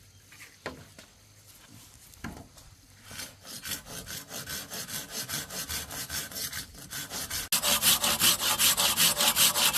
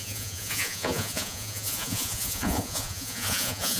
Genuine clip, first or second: first